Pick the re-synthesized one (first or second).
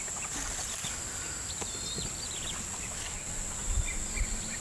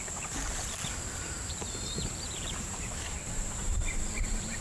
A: second